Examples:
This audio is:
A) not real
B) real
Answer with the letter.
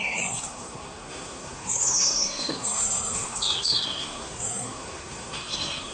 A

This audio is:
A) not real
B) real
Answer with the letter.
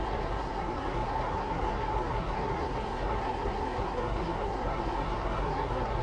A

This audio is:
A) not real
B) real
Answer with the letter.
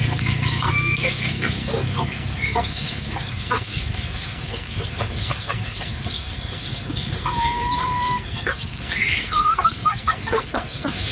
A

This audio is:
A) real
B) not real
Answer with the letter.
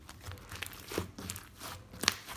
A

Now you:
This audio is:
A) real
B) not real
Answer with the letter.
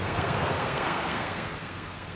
B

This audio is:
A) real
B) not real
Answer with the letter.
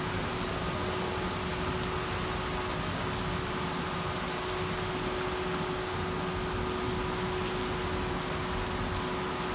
A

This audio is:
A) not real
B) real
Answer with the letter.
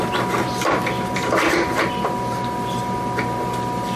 B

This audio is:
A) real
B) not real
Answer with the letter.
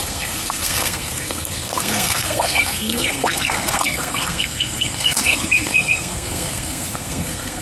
B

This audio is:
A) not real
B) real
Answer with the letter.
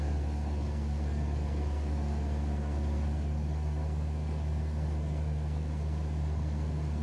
A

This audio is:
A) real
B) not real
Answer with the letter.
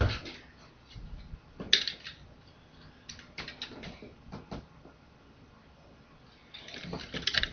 A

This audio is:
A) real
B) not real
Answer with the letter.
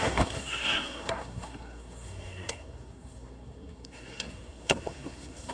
B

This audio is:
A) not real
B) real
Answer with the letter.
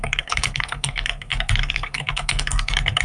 A